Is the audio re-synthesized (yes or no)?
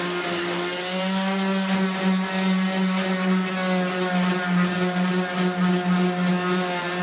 no